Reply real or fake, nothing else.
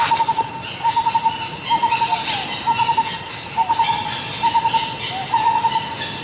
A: real